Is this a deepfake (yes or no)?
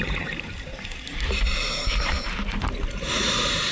yes